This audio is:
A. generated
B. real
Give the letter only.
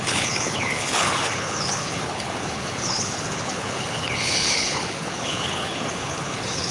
A